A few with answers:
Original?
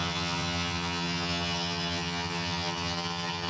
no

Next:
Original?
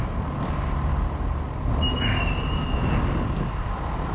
yes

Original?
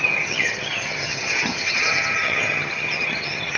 no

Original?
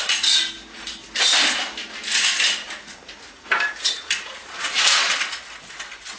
yes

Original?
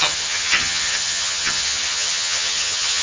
no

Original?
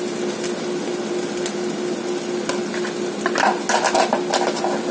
yes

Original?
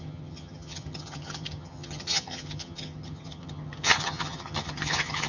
no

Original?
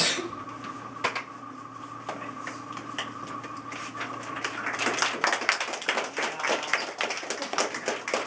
yes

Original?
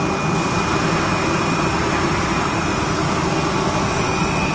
yes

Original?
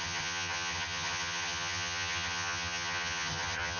no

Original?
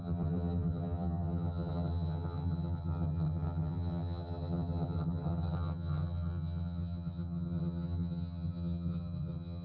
no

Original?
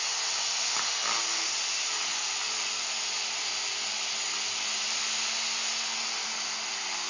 yes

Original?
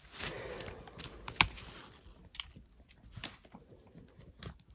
yes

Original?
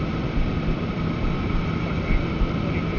yes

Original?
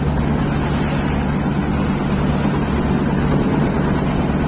yes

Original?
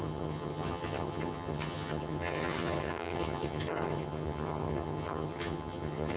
no